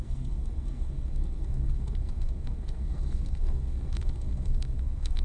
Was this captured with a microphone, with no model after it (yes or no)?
no